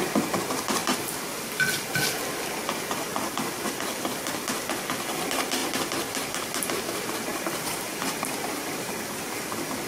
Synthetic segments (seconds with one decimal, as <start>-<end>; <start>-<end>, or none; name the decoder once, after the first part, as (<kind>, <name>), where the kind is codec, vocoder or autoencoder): 0.8-1.7 (vocoder, BigVGAN v2); 7.3-7.8

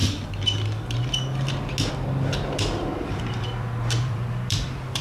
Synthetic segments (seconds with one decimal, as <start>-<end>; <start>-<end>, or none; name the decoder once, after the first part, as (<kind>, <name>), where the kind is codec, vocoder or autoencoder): 1.9-5.0 (vocoder, BigVGAN v2)

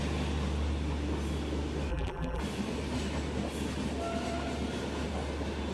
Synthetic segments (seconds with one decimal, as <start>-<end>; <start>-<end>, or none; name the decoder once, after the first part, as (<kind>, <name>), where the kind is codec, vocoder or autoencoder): 1.9-2.4 (vocoder, BigVGAN v2)

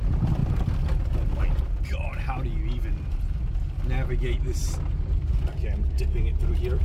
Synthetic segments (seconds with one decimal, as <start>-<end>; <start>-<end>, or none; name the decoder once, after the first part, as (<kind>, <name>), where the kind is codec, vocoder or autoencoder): none

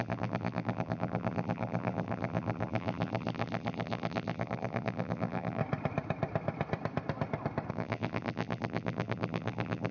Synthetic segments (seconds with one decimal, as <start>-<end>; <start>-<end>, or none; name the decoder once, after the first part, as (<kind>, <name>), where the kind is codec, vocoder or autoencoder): 0.0-5.6 (vocoder, BigVGAN v2); 7.7-9.9

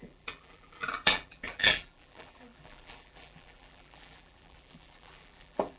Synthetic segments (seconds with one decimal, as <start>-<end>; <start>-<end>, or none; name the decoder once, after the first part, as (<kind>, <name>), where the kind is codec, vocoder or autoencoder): 0.0-5.8 (vocoder, BigVGAN v2)